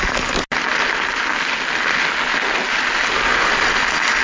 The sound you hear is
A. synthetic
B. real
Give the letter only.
B